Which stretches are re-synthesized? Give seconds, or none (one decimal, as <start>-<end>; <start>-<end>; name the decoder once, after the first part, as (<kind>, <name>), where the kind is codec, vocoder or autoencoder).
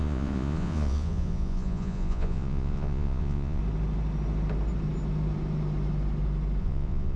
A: 0.0-3.6 (vocoder, Vocos); 6.6-7.2